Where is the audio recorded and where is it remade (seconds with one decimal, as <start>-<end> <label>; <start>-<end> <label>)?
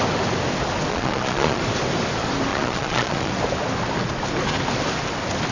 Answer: 0.0-0.9 recorded; 0.9-1.6 remade; 1.6-2.5 recorded; 2.5-3.3 remade; 3.3-5.5 recorded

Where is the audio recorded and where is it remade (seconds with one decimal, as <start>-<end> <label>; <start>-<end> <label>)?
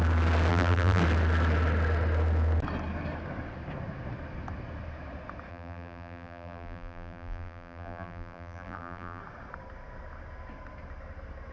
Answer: 0.0-0.5 recorded; 0.5-1.0 remade; 1.0-5.5 recorded; 5.5-9.2 remade; 9.2-11.5 recorded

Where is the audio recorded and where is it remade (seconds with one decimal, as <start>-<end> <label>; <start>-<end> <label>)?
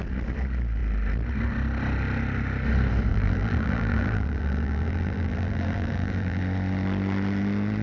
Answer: 0.0-3.1 recorded; 3.1-6.4 remade; 6.4-7.8 recorded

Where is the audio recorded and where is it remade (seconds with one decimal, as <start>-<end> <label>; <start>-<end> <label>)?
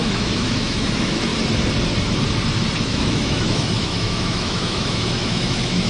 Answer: 0.0-1.3 remade; 1.3-2.8 recorded; 2.8-5.9 remade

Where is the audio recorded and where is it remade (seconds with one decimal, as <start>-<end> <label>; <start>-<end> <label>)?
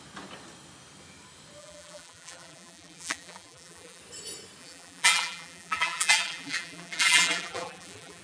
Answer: 0.0-1.6 recorded; 1.6-4.0 remade; 4.0-4.6 recorded; 4.6-8.2 remade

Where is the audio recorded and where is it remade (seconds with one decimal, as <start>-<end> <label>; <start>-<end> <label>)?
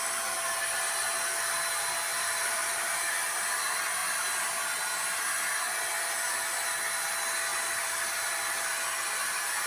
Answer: 0.0-2.1 recorded; 2.1-3.1 remade; 3.1-7.5 recorded; 7.5-8.3 remade; 8.3-9.7 recorded